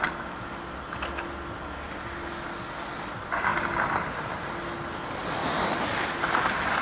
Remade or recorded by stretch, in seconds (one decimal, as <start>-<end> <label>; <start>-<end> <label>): 0.0-5.4 recorded; 5.4-6.8 remade